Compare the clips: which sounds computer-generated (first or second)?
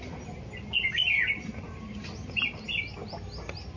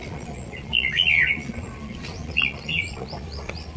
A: second